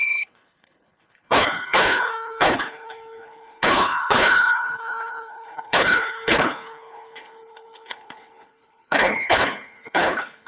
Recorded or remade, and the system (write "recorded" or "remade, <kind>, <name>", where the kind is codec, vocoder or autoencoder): remade, codec, HILCodec